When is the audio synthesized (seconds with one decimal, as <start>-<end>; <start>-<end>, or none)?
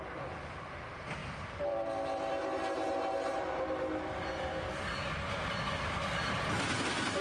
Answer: none